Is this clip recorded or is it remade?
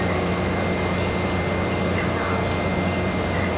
recorded